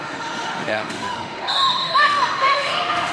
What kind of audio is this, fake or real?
fake